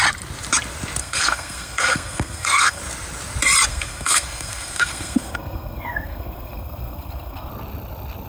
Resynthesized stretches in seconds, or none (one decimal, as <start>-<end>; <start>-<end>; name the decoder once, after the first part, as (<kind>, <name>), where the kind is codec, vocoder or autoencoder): 1.0-2.8 (codec, SNAC); 3.7-7.5